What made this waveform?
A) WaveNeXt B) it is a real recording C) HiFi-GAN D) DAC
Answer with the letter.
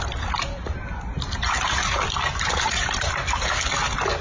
B